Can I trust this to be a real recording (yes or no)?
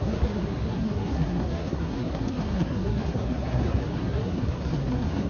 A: no